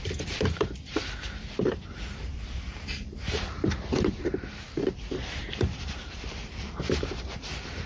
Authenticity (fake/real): fake